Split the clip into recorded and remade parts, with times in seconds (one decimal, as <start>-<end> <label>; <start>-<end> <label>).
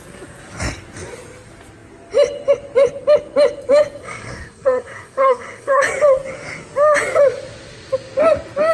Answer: 0.0-4.0 recorded; 4.0-5.8 remade; 5.8-8.7 recorded